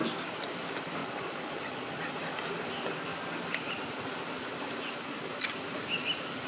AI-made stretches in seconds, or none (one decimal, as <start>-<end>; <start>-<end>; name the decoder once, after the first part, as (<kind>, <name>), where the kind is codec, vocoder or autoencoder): 1.0-2.0 (vocoder, Vocos)